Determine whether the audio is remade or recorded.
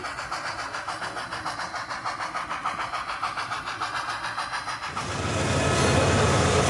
recorded